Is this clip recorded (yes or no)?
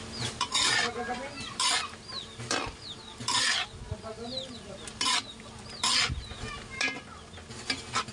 yes